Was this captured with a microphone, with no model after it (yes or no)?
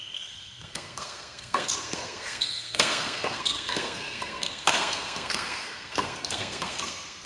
no